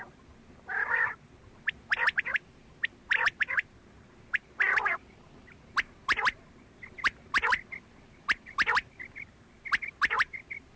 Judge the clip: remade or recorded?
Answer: recorded